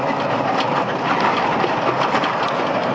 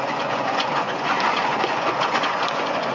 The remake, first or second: second